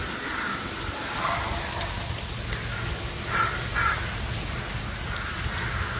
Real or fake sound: real